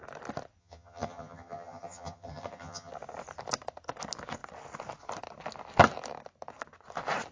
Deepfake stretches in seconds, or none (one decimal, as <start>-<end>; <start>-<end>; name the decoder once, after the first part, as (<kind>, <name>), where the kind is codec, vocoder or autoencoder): 0.6-2.9 (vocoder, HiFi-GAN)